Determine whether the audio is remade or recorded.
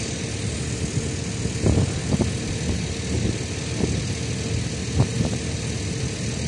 recorded